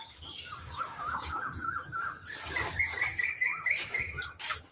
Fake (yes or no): yes